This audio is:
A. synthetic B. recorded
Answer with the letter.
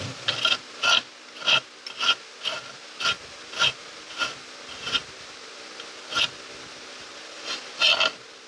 B